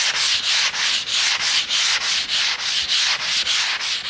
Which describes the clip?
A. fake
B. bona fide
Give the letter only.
B